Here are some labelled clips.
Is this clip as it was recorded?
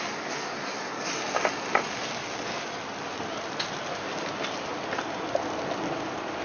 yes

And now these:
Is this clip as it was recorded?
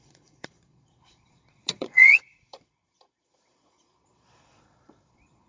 no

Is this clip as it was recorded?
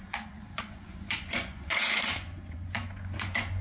no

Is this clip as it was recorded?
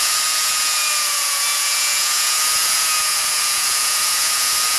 no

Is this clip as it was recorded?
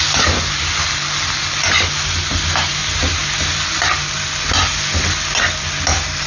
yes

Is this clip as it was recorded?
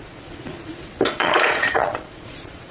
no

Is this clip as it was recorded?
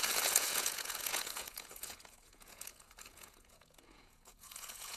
no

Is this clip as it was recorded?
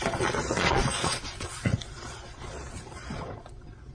no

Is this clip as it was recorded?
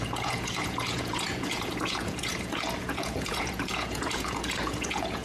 no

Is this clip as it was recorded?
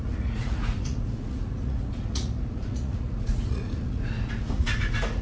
no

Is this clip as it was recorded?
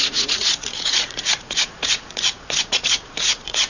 no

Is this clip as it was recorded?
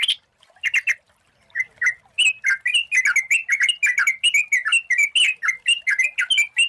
yes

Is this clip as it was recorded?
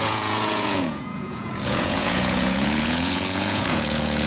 no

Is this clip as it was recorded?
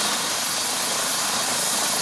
yes